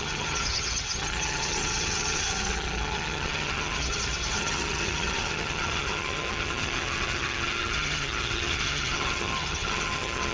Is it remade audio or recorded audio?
remade